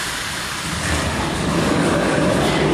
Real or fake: fake